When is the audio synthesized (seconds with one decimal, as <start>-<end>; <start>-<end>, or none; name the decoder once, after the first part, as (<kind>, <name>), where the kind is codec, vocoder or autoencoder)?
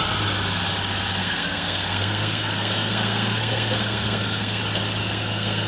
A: 1.2-4.6 (codec, SNAC); 5.0-5.7